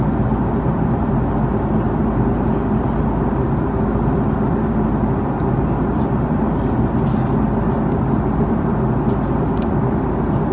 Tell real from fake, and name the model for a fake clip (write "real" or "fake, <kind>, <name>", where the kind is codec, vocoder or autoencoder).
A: real